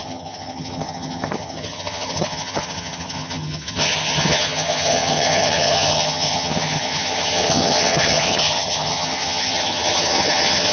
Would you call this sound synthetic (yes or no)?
yes